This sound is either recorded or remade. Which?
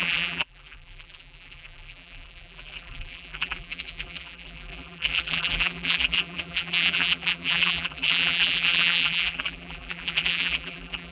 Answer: remade